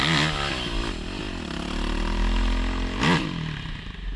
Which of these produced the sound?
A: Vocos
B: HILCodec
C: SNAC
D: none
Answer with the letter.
D